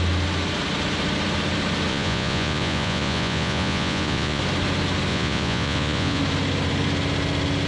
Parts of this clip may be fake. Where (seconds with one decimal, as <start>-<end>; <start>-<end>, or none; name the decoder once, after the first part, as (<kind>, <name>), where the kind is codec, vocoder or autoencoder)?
1.9-4.4 (vocoder, Vocos); 5.1-6.2